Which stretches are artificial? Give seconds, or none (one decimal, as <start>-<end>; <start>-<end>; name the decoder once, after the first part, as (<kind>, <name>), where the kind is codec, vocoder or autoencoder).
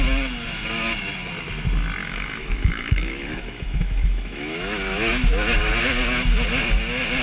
2.0-5.7 (autoencoder, DAC-VAE)